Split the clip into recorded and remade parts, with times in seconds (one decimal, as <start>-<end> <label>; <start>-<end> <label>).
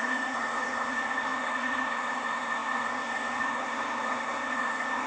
0.0-5.1 remade